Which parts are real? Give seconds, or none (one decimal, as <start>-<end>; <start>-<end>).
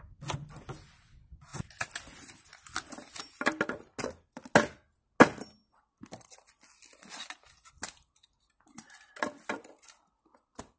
0.0-10.8